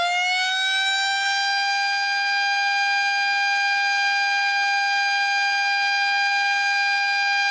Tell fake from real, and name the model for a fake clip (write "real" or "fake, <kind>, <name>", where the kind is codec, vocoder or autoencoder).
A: real